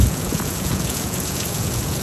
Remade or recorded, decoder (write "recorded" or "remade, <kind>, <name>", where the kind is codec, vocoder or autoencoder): remade, vocoder, Vocos